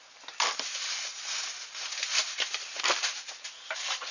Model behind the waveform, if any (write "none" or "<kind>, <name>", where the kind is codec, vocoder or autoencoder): none